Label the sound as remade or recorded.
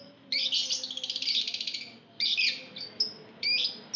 recorded